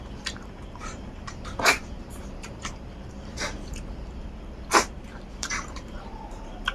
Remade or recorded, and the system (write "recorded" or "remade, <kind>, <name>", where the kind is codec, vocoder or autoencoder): remade, vocoder, BigVGAN v2